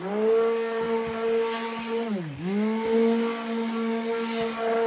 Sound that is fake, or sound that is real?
real